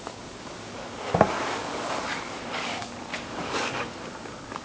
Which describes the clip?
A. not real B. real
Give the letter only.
A